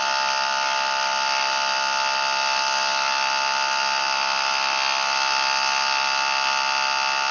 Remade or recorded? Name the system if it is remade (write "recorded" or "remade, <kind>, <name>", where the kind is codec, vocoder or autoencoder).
recorded